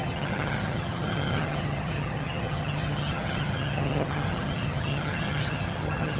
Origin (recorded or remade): remade